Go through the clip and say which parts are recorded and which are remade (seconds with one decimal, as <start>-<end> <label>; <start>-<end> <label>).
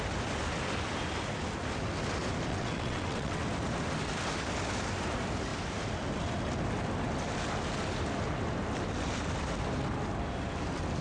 0.0-2.5 recorded; 2.5-3.4 remade; 3.4-11.0 recorded